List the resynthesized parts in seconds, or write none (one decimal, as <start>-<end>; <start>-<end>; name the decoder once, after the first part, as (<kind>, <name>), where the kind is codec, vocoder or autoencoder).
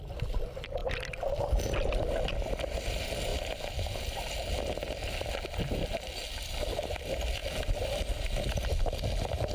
3.3-4.3 (vocoder, BigVGAN v2)